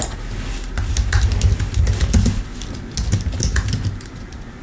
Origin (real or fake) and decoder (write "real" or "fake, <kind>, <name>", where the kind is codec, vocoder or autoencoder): real